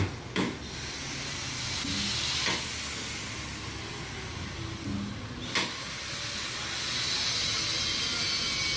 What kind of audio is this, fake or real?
real